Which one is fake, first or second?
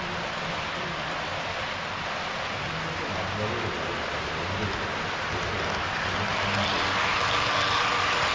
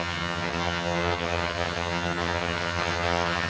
second